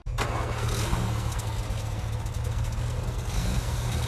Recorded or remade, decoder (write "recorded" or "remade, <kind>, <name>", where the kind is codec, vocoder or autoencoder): remade, codec, SNAC